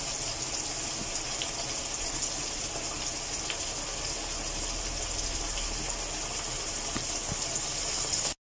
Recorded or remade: recorded